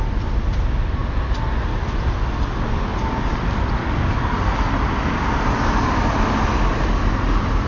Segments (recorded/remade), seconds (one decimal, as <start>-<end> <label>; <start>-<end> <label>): 0.0-7.7 recorded